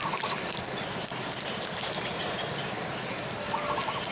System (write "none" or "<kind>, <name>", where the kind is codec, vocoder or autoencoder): none